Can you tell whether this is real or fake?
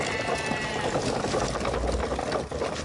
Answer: real